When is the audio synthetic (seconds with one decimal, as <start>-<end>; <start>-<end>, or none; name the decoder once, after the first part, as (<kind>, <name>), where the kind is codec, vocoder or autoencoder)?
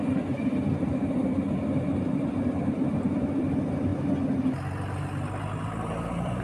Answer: 0.0-1.4 (vocoder, BigVGAN v2); 2.6-3.9; 5.6-6.4